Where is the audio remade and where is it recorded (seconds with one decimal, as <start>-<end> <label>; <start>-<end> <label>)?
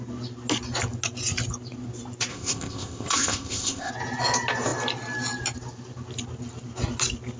0.0-2.3 recorded; 2.3-3.9 remade; 3.9-7.4 recorded